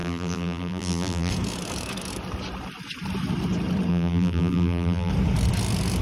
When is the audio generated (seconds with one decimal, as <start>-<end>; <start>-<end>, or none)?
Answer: 0.0-1.3; 3.9-5.1

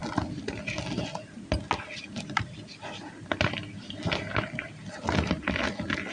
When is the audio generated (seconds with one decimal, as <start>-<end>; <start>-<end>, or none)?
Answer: none

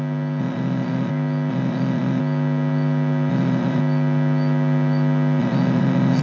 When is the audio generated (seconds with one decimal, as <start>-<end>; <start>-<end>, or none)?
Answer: 0.4-1.1; 1.5-2.2; 3.3-3.8; 5.4-6.2

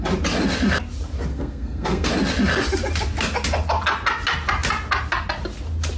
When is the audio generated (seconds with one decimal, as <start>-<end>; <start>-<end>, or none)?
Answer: 1.3-2.1

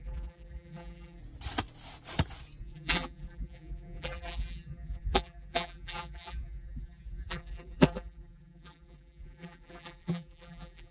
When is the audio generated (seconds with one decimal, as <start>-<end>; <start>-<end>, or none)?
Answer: 0.0-1.2; 2.6-10.9

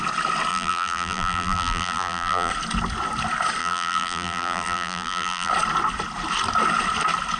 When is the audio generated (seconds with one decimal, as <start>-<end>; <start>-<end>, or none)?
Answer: 0.5-2.5; 3.6-5.5

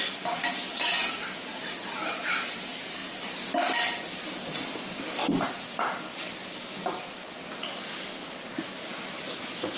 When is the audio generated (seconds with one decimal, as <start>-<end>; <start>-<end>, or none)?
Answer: none

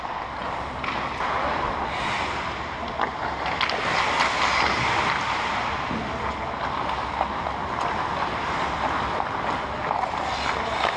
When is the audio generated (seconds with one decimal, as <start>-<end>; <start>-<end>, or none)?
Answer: none